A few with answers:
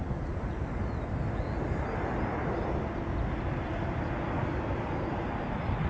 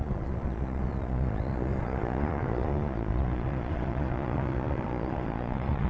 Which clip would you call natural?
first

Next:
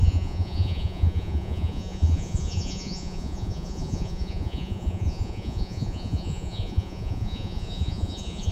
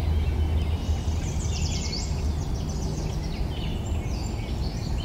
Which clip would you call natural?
second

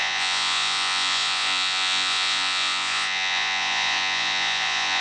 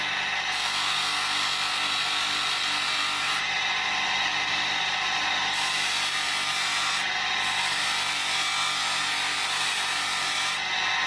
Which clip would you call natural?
second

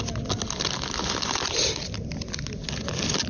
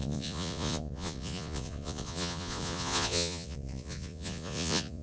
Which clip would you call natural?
first